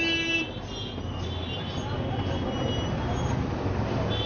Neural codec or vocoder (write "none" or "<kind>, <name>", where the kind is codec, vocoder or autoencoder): none